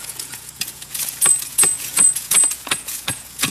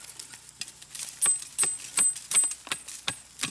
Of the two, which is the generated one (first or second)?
first